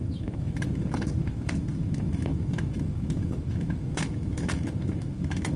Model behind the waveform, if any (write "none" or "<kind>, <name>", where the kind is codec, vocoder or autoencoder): autoencoder, DAC-VAE